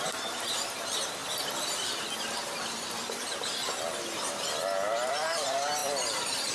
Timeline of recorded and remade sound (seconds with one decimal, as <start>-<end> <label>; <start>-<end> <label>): 0.0-1.2 remade; 1.2-5.1 recorded; 5.1-5.8 remade; 5.8-6.5 recorded